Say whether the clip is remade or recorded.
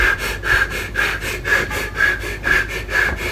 recorded